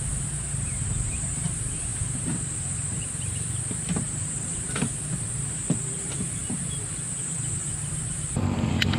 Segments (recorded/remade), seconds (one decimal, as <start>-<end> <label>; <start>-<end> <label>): 0.0-9.0 remade